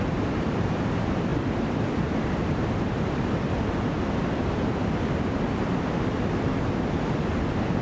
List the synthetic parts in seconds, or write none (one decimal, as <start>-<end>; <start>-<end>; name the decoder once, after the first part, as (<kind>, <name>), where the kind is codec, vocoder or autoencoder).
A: 1.3-4.0 (vocoder, BigVGAN v2)